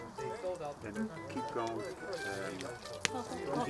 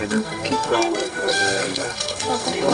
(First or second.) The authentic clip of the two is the first